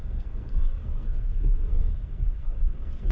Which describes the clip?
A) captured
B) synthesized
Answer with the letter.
B